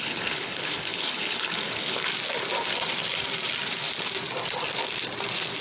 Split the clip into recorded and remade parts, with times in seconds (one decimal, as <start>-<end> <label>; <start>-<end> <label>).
0.0-2.1 remade; 2.1-5.6 recorded